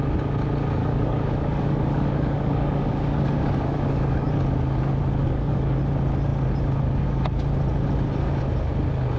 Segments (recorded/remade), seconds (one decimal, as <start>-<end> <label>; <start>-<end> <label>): 0.0-0.8 recorded; 0.8-4.3 remade; 4.3-5.2 recorded; 5.2-5.8 remade; 5.8-9.2 recorded